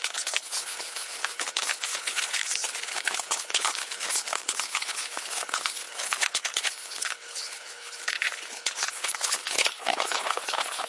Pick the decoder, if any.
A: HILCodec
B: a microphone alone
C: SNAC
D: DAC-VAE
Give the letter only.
A